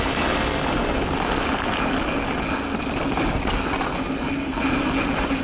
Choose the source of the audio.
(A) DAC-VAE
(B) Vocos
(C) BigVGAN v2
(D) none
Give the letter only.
D